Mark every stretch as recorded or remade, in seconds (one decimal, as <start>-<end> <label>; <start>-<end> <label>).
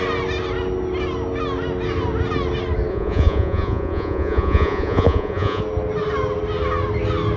0.0-2.9 recorded; 2.9-5.6 remade; 5.6-7.4 recorded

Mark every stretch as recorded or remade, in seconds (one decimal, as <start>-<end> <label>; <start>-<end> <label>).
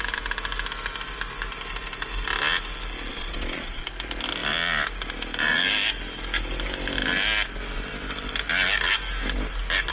0.0-3.1 recorded; 3.1-3.8 remade; 3.8-9.9 recorded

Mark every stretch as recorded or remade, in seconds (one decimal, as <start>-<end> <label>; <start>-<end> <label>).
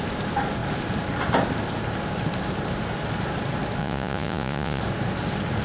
0.0-3.8 recorded; 3.8-4.8 remade; 4.8-5.6 recorded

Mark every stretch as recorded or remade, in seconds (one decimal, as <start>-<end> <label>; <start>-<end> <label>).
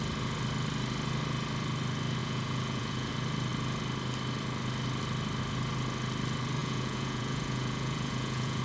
0.0-2.2 recorded; 2.2-3.1 remade; 3.1-6.6 recorded; 6.6-8.6 remade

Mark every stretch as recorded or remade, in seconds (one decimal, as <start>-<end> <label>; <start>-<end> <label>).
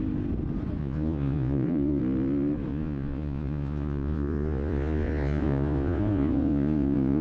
0.0-0.8 recorded; 0.8-2.0 remade; 2.0-2.7 recorded; 2.7-7.2 remade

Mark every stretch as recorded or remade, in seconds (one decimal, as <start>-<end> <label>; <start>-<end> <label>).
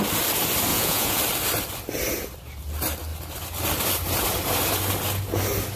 0.0-0.7 recorded; 0.7-1.2 remade; 1.2-5.8 recorded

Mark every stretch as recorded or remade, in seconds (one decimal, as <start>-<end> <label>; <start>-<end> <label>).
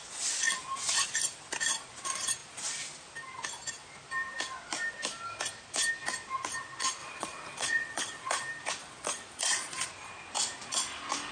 0.0-7.0 recorded; 7.0-8.3 remade; 8.3-8.8 recorded; 8.8-9.9 remade; 9.9-11.3 recorded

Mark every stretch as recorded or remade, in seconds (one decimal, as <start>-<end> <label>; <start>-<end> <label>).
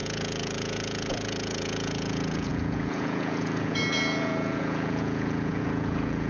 0.0-6.3 remade